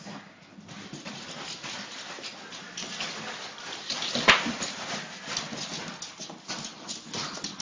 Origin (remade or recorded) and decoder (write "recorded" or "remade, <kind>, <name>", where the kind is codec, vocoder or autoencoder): recorded